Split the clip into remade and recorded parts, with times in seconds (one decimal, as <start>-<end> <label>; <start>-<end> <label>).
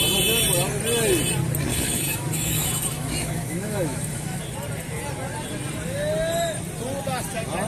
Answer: 0.0-1.7 recorded; 1.7-4.4 remade; 4.4-7.7 recorded